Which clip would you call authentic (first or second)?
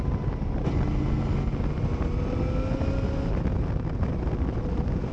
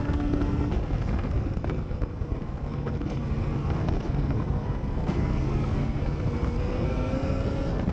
first